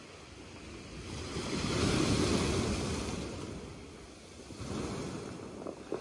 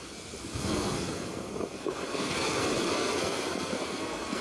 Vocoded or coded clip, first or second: second